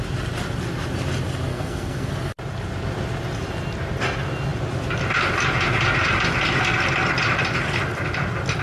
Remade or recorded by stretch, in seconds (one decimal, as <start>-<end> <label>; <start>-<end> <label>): 0.0-1.5 recorded; 1.5-2.1 remade; 2.1-8.6 recorded